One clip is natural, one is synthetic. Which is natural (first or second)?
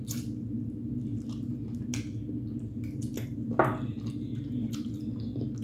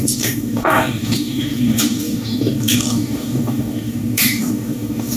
first